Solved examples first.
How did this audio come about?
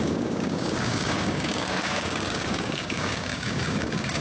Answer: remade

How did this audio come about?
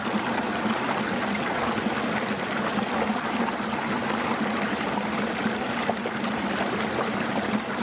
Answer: recorded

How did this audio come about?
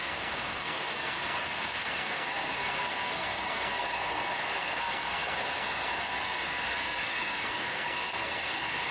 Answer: remade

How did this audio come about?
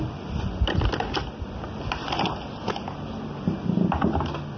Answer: recorded